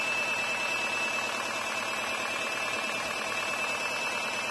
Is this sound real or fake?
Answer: real